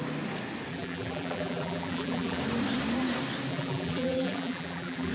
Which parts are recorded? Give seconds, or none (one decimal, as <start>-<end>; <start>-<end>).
0.0-0.7; 2.4-3.5